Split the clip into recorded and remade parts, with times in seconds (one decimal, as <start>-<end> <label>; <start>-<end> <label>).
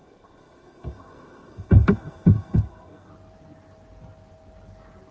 0.0-3.1 remade; 3.1-5.1 recorded